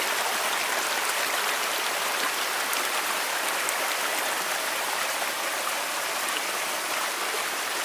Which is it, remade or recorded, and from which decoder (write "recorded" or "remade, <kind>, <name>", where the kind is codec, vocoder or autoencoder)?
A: remade, vocoder, BigVGAN v2